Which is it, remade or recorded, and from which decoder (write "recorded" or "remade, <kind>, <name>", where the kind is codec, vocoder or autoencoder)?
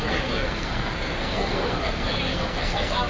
remade, codec, SNAC